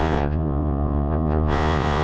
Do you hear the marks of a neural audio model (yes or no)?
yes